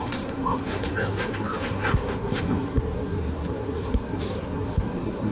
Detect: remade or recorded remade